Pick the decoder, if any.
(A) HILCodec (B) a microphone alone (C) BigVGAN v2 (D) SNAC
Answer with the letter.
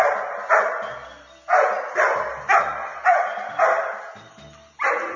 B